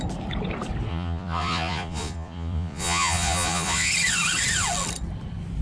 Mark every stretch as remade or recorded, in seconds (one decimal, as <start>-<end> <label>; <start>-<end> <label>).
0.0-0.9 recorded; 0.9-3.9 remade; 3.9-5.6 recorded